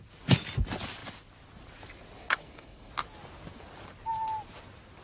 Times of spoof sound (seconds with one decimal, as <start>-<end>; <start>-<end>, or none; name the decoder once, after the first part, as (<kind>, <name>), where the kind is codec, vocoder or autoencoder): 2.4-2.9 (codec, SNAC)